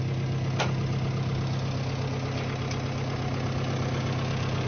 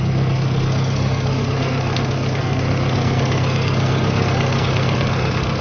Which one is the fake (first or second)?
second